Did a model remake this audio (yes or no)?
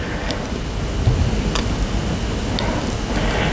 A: no